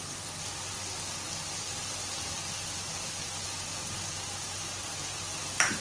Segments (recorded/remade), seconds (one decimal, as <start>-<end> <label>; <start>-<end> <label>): 0.0-5.8 recorded